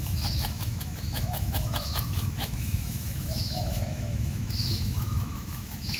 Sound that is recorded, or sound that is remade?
remade